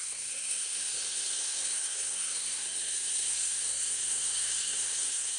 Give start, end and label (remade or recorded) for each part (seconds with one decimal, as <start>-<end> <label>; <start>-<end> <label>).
0.0-5.4 remade

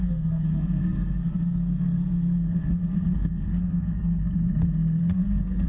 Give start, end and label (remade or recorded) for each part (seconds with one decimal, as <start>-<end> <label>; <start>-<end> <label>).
0.0-4.2 remade; 4.2-5.0 recorded; 5.0-5.7 remade

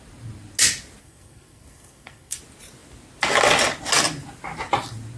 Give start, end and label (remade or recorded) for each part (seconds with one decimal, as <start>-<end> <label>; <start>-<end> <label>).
0.0-1.0 recorded; 1.0-2.4 remade; 2.4-5.2 recorded